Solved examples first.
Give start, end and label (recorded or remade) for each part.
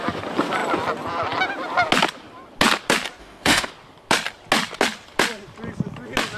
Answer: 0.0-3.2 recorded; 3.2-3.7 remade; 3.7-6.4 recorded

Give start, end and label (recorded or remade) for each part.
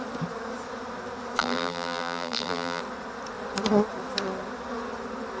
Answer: 0.0-1.4 recorded; 1.4-2.8 remade; 2.8-5.4 recorded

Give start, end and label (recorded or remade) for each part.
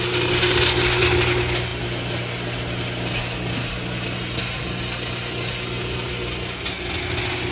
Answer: 0.0-7.5 recorded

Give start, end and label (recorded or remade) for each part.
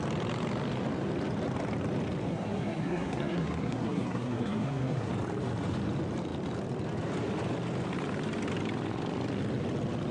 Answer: 0.0-2.3 recorded; 2.3-5.1 remade; 5.1-10.1 recorded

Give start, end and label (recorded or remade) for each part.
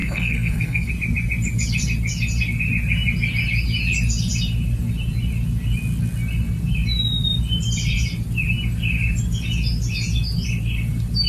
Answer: 0.0-0.9 remade; 0.9-11.3 recorded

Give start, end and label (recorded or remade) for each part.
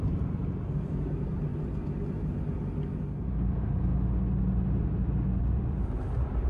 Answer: 0.0-0.4 remade; 0.4-1.0 recorded; 1.0-1.5 remade; 1.5-3.1 recorded; 3.1-3.9 remade; 3.9-5.4 recorded; 5.4-6.5 remade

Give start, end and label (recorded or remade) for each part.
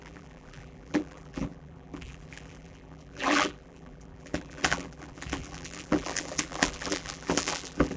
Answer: 0.0-8.0 remade